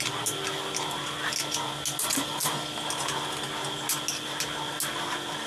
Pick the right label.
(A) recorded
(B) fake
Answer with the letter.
A